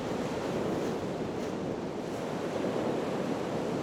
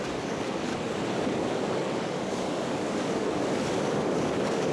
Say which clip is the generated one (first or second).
second